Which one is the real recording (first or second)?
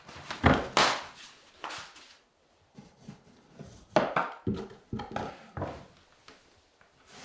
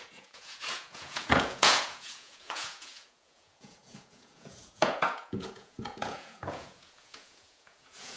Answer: first